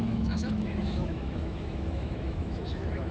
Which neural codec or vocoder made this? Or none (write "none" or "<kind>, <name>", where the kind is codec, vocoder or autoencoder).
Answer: autoencoder, DAC-VAE